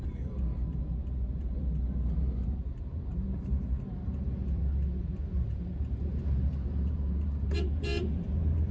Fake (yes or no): yes